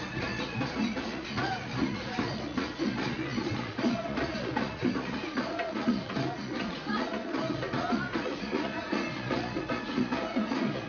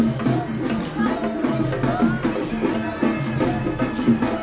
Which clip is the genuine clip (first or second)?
second